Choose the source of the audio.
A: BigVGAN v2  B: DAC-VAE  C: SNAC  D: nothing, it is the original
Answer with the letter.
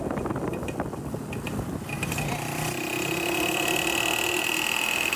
D